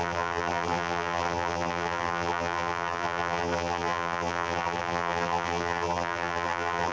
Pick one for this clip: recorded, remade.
remade